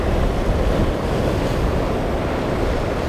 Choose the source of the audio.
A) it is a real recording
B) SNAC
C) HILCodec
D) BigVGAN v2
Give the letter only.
A